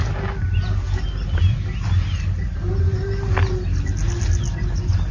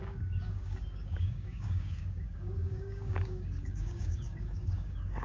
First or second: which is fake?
second